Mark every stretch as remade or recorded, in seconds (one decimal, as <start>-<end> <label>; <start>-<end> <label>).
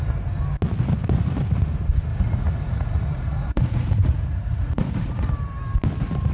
0.0-2.1 recorded; 2.1-5.3 remade; 5.3-6.3 recorded